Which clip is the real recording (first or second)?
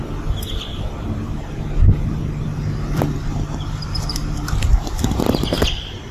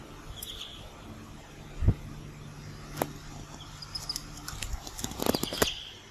second